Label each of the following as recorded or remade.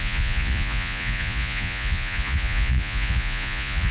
remade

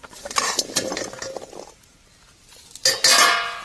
recorded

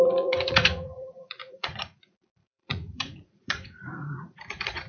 remade